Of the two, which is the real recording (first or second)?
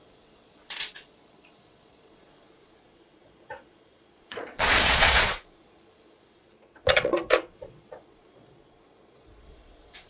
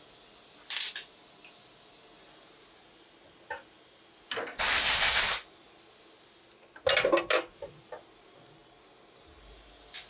second